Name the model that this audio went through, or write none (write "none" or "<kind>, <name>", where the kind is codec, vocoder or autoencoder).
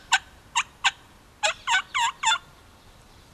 vocoder, BigVGAN v2